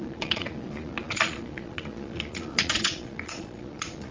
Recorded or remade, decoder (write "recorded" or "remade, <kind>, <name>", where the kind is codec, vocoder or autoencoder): remade, vocoder, Vocos